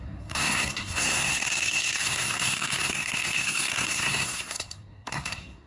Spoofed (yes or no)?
yes